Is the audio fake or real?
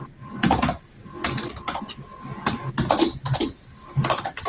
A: real